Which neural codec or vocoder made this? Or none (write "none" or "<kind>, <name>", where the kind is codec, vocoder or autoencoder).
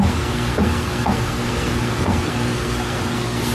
codec, SNAC